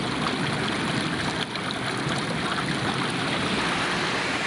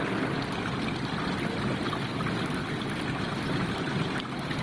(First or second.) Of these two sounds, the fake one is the second